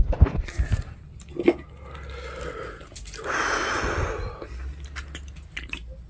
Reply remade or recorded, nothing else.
recorded